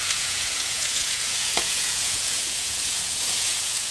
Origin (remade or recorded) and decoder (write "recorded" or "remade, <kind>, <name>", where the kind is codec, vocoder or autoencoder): remade, vocoder, Vocos